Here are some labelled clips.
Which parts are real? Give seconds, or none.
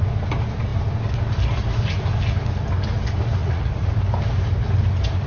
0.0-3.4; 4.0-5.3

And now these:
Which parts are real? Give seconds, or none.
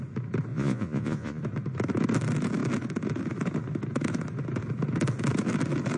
0.0-0.5; 1.4-6.0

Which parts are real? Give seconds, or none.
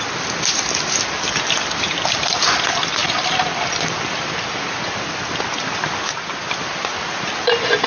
0.0-7.9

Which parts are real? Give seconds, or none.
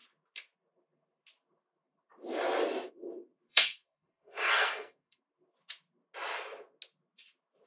0.0-3.5; 5.2-7.7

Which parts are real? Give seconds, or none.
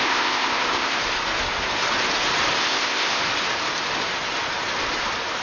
1.0-2.6; 3.2-5.4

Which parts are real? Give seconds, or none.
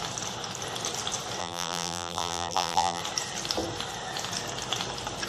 0.0-1.4; 3.0-5.3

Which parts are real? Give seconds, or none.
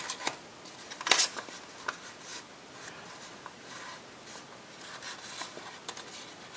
0.0-6.6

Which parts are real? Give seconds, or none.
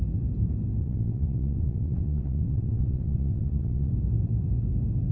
0.0-0.8; 3.9-5.1